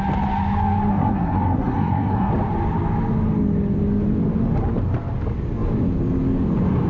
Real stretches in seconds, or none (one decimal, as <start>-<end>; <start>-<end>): 0.0-0.9; 2.3-6.9